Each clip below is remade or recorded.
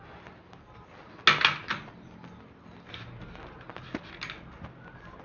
recorded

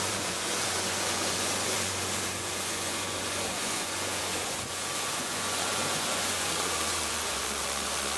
remade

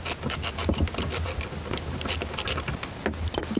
recorded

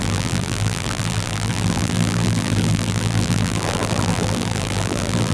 remade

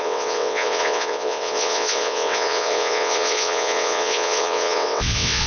remade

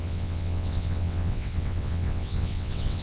remade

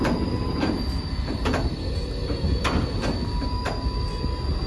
recorded